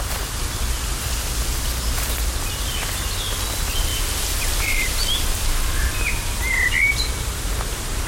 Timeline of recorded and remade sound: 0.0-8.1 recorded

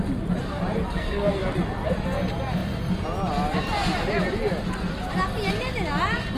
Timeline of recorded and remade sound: 0.0-0.8 recorded; 0.8-1.4 remade; 1.4-6.4 recorded

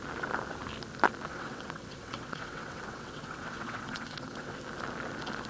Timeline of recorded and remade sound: 0.0-1.3 recorded; 1.3-4.6 remade; 4.6-5.5 recorded